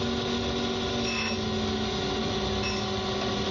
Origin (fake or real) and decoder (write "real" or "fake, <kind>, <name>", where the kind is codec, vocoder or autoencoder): real